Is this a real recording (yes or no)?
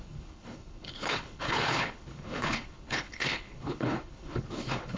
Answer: no